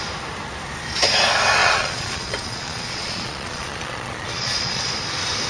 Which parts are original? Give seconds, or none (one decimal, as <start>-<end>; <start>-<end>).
0.0-1.6; 4.9-5.5